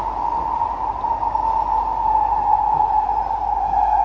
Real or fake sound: real